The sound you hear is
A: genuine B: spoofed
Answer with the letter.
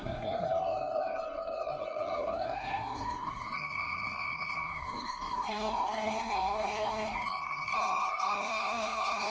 B